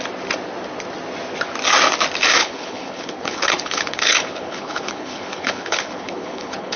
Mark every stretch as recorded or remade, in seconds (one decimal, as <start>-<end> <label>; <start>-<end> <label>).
0.0-2.4 recorded; 2.4-6.8 remade

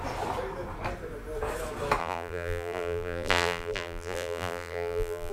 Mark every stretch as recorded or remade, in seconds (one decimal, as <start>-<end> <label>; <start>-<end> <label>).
0.0-2.0 recorded; 2.0-5.3 remade

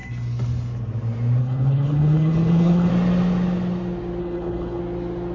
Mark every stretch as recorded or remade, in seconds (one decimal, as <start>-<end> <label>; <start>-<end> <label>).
0.0-1.4 recorded; 1.4-2.9 remade; 2.9-4.2 recorded; 4.2-4.8 remade; 4.8-5.3 recorded

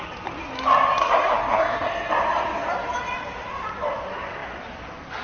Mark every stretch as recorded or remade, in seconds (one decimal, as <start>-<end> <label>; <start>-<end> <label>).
0.0-1.0 recorded; 1.0-2.1 remade; 2.1-5.2 recorded

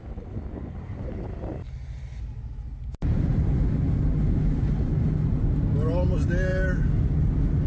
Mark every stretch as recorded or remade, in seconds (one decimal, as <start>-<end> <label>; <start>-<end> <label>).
0.0-7.7 recorded